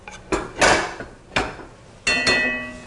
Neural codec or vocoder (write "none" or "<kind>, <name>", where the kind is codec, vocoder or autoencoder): none